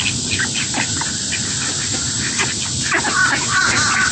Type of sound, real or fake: real